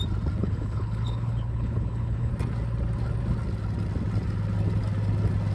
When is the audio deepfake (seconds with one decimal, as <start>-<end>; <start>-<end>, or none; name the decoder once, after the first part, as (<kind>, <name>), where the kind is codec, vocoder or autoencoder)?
0.4-2.3 (codec, HILCodec)